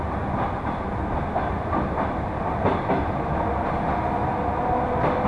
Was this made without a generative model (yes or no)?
yes